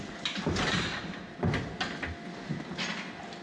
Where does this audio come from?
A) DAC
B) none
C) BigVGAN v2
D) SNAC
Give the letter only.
B